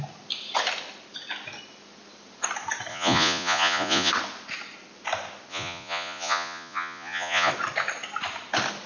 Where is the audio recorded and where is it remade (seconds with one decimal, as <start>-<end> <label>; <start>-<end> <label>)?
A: 0.0-2.9 recorded; 2.9-4.1 remade; 4.1-5.5 recorded; 5.5-7.5 remade; 7.5-8.9 recorded